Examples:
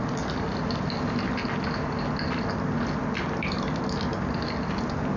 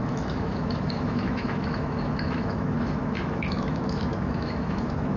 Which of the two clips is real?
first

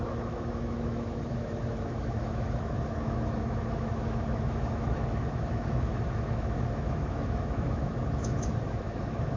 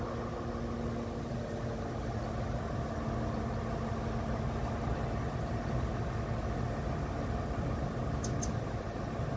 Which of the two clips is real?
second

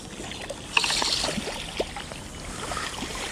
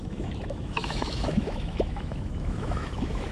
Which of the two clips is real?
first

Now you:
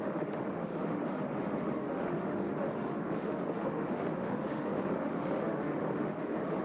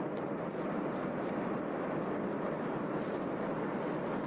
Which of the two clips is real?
second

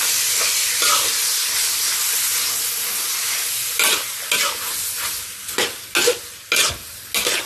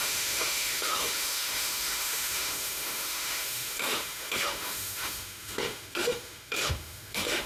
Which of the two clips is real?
first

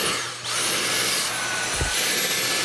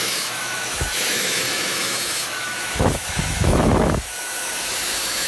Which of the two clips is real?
first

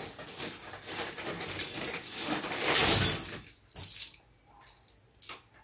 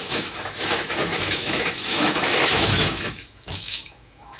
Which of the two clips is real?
first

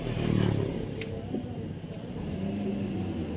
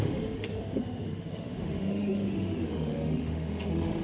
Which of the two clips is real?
first